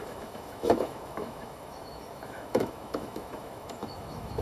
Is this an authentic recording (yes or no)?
no